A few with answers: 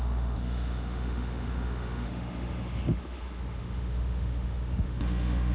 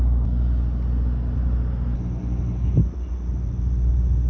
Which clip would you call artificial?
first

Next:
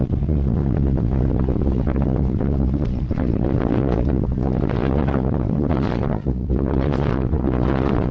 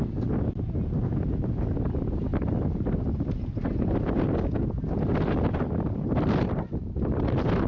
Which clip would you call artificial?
first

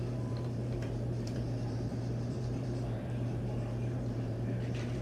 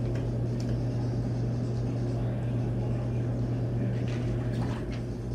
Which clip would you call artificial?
first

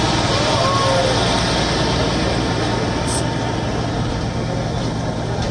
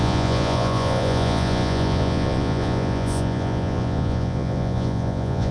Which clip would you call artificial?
second